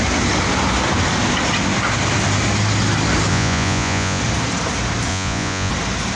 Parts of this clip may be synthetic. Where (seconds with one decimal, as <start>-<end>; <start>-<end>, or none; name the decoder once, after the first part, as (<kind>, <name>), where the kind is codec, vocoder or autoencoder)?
3.3-4.2 (vocoder, Vocos); 5.1-5.7